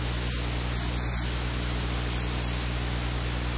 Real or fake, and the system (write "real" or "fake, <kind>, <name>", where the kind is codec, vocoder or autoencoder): real